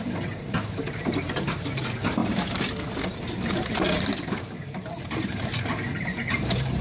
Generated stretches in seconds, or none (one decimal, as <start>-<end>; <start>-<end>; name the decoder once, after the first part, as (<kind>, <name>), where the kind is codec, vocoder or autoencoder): 0.0-2.2 (vocoder, BigVGAN v2); 3.2-6.8